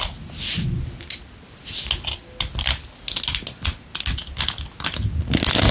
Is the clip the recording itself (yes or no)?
yes